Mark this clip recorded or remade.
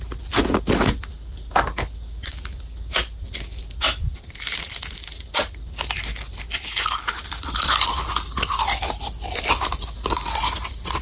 recorded